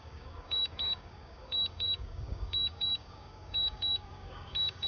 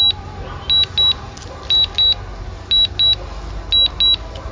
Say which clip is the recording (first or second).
second